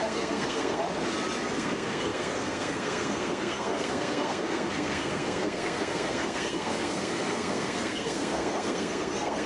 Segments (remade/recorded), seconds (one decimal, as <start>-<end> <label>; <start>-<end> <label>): 0.0-0.8 remade; 0.8-1.5 recorded; 1.5-9.5 remade